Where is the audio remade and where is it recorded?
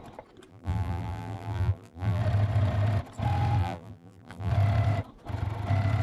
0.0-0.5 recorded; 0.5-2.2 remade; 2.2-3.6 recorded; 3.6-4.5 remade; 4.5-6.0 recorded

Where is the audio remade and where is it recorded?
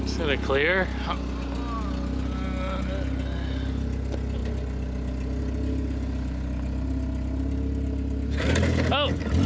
0.0-9.5 recorded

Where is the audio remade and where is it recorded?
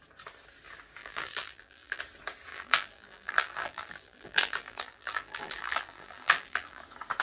0.0-1.0 recorded; 1.0-2.0 remade; 2.0-2.5 recorded; 2.5-6.8 remade; 6.8-7.2 recorded